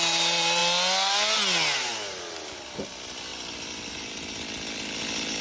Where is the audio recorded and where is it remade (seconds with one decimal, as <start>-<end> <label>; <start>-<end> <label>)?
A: 0.0-5.4 recorded